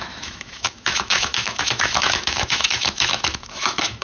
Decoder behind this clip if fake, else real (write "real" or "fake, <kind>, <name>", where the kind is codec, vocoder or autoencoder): fake, autoencoder, DAC-VAE